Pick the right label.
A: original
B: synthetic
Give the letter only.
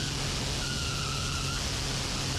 A